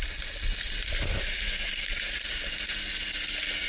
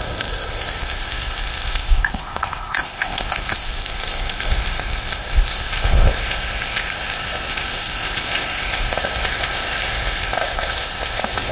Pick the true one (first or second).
first